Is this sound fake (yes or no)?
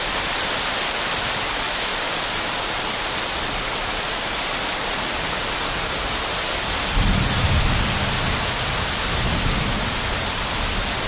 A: no